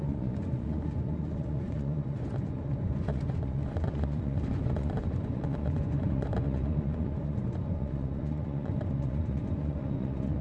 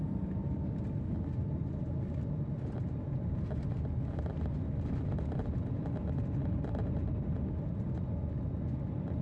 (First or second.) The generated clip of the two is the first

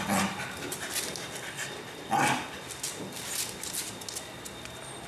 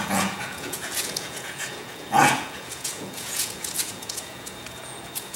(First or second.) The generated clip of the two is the second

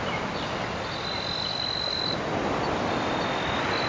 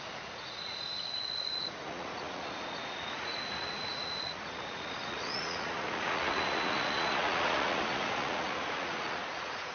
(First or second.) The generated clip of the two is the second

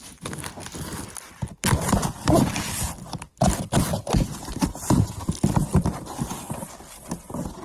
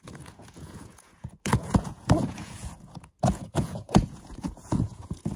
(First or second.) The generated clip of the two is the second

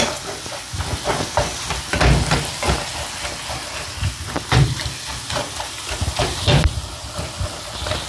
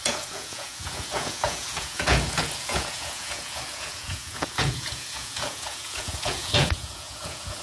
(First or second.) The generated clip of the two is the second